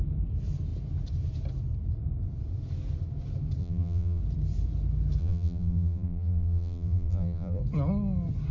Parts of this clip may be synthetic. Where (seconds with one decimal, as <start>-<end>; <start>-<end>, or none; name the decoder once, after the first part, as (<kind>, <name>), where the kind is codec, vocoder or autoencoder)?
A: 3.6-4.2 (vocoder, BigVGAN v2); 5.2-7.6